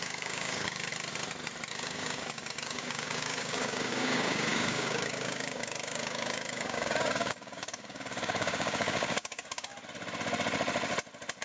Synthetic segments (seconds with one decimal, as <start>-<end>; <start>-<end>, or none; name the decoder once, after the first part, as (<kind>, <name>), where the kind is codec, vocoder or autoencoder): 0.0-0.9 (codec, DAC); 1.7-9.7